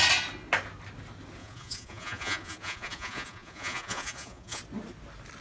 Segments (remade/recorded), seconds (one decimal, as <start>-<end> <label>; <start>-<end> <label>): 0.0-1.4 recorded; 1.4-4.6 remade; 4.6-5.4 recorded